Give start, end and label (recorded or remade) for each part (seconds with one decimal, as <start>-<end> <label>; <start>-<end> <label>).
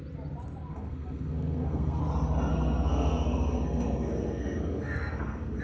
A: 0.0-0.7 recorded; 0.7-2.0 remade; 2.0-2.5 recorded; 2.5-5.6 remade